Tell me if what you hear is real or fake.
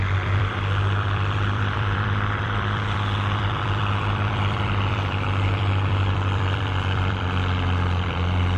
fake